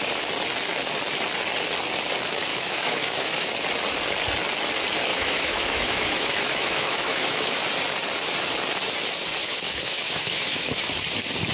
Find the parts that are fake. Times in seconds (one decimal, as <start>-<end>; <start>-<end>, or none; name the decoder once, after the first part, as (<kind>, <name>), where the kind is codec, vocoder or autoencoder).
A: 2.5-3.5 (autoencoder, DAC-VAE); 5.1-7.6; 9.4-10.8

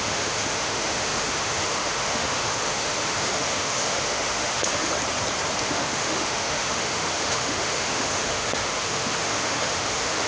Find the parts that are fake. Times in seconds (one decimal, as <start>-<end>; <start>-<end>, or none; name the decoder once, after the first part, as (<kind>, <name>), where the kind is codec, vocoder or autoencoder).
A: 0.0-4.9 (autoencoder, DAC-VAE); 5.6-10.3

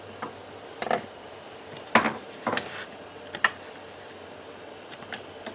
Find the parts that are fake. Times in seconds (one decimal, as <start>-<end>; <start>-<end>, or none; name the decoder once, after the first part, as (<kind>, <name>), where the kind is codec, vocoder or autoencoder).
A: none

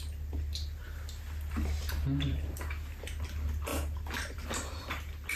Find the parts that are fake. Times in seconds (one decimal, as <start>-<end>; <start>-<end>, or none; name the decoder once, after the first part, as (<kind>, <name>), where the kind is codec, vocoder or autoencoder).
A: none

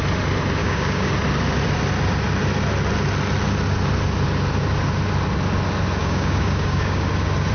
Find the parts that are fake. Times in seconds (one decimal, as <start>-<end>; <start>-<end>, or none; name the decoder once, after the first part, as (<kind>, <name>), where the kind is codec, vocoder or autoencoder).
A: 0.6-1.1 (codec, DAC); 6.0-7.1

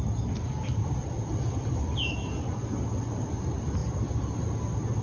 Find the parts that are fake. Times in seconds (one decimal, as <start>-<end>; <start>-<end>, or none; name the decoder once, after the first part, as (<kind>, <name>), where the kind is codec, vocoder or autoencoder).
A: none

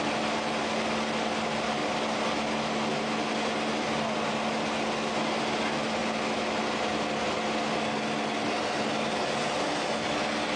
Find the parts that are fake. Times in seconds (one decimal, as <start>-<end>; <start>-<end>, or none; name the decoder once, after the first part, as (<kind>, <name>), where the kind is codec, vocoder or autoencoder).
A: none

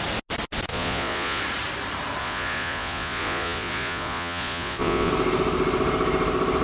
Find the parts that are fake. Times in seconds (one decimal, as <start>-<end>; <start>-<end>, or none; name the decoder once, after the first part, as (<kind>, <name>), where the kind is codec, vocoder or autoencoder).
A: 0.7-1.4 (vocoder, Vocos); 2.2-5.1